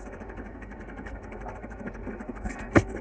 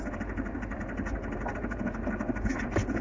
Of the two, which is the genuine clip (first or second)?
second